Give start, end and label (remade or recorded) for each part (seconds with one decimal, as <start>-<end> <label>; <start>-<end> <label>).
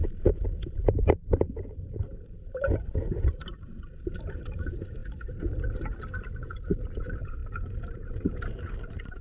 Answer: 0.0-5.0 remade; 5.0-7.0 recorded; 7.0-9.2 remade